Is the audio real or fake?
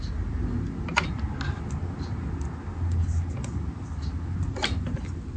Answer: real